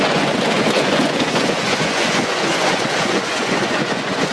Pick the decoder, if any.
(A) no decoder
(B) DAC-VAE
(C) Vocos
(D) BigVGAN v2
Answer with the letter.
C